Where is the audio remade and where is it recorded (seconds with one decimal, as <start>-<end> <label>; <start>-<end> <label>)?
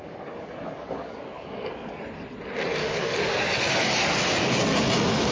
0.0-2.0 remade; 2.0-2.8 recorded; 2.8-3.6 remade; 3.6-5.3 recorded